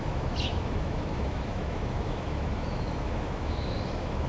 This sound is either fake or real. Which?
fake